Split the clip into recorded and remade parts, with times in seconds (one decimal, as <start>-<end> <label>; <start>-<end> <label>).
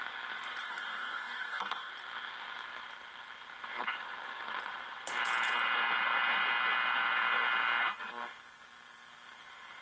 0.0-0.6 recorded; 0.6-1.9 remade; 1.9-9.8 recorded